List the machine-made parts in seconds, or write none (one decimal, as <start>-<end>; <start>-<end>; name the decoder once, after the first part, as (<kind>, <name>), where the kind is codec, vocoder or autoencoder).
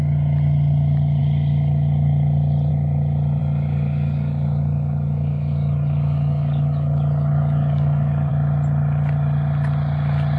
3.4-8.3 (codec, DAC)